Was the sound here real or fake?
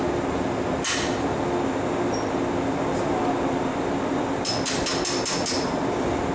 real